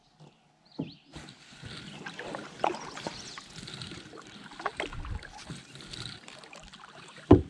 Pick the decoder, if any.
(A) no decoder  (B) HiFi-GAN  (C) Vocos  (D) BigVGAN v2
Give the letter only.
A